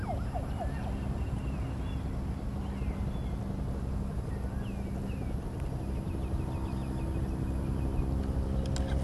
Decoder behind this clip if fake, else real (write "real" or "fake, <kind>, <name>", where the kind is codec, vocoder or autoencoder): real